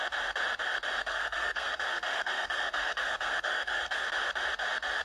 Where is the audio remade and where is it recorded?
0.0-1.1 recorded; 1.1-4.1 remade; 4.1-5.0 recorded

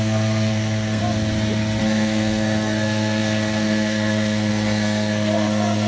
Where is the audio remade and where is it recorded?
0.0-1.0 remade; 1.0-1.8 recorded; 1.8-5.9 remade

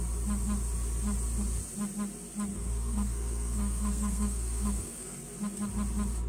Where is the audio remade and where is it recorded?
0.0-2.5 recorded; 2.5-5.2 remade; 5.2-6.3 recorded

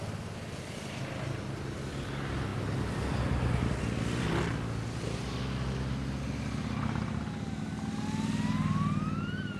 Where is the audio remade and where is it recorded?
0.0-9.6 recorded

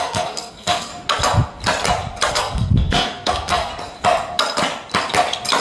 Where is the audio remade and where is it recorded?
0.0-0.9 remade; 0.9-2.3 recorded; 2.3-3.7 remade; 3.7-5.6 recorded

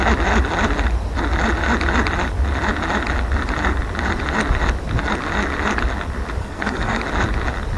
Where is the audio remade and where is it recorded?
0.0-6.4 recorded; 6.4-7.0 remade; 7.0-7.8 recorded